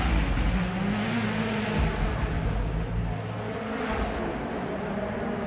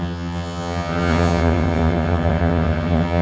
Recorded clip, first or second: first